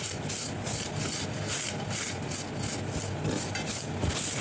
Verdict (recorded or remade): recorded